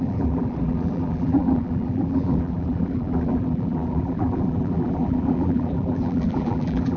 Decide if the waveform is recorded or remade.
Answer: remade